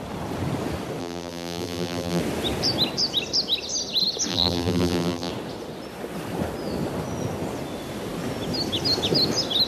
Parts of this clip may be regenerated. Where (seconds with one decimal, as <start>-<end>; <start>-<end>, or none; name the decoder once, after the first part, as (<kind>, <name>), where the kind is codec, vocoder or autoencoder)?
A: 1.0-2.2 (vocoder, BigVGAN v2); 4.3-5.3